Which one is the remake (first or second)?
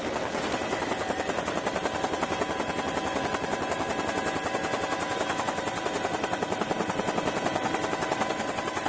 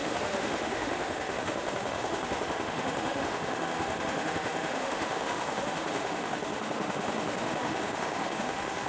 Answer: second